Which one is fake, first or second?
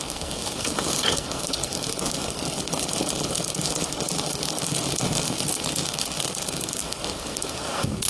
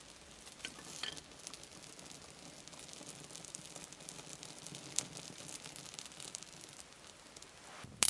first